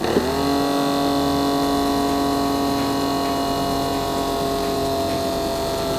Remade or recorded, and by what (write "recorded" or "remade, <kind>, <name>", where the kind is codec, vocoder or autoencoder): recorded